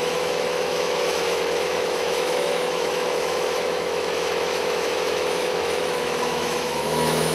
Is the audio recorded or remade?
remade